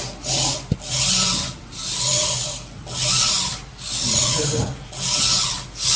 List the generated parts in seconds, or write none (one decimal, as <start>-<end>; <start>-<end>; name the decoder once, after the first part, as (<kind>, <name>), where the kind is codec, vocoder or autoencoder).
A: none